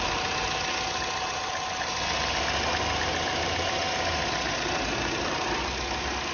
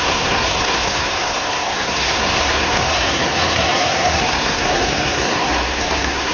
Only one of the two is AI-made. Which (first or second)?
second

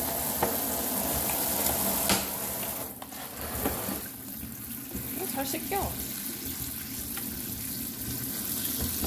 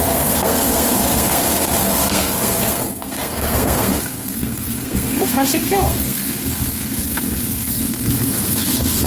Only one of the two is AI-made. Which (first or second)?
second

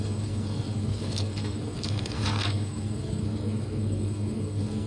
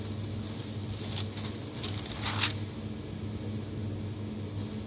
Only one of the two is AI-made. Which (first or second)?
first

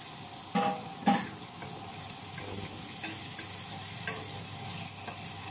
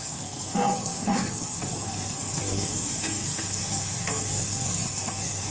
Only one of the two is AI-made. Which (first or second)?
second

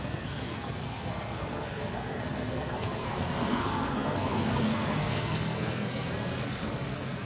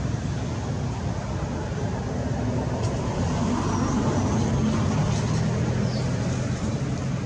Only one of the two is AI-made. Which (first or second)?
first